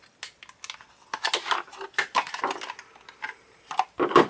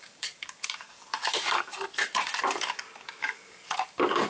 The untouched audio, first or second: first